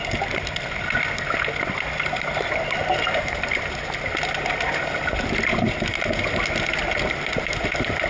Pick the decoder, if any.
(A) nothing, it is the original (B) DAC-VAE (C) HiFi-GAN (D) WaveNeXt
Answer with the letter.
A